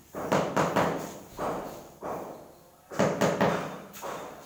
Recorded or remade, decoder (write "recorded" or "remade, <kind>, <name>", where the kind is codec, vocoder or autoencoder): recorded